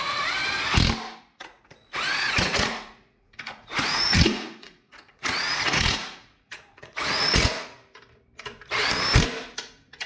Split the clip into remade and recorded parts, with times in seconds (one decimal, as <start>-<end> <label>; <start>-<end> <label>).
0.0-0.4 remade; 0.4-1.2 recorded; 1.2-7.8 remade; 7.8-9.5 recorded; 9.5-10.1 remade